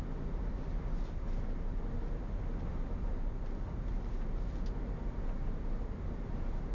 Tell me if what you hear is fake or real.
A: real